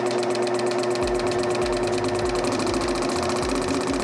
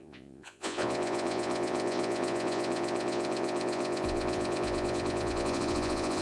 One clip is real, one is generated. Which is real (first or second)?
first